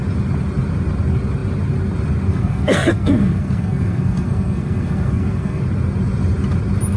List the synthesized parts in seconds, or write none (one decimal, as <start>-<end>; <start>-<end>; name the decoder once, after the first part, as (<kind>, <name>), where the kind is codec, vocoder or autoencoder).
2.3-5.6 (codec, SNAC)